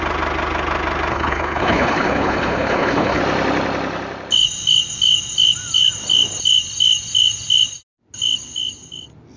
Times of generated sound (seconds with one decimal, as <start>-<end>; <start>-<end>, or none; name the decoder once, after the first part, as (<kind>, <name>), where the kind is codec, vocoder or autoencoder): 1.1-3.2 (codec, HILCodec)